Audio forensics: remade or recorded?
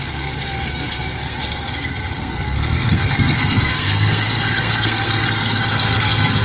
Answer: remade